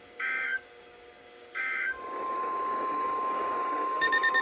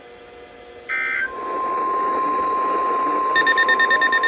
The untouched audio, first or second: second